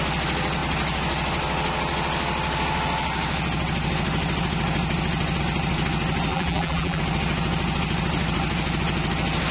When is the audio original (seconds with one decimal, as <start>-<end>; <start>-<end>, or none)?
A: 0.0-6.3; 7.0-9.5